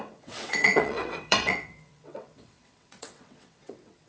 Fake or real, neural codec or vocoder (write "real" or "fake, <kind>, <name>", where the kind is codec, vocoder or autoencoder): fake, vocoder, WaveNeXt